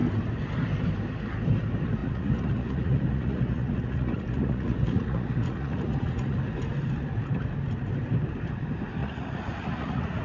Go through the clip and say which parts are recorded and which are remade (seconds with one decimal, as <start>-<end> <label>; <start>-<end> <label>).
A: 0.0-2.0 recorded; 2.0-6.4 remade; 6.4-9.0 recorded; 9.0-10.2 remade